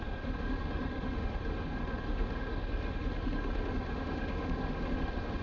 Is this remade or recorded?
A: remade